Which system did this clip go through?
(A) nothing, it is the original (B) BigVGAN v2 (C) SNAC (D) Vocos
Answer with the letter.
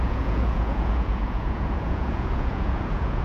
D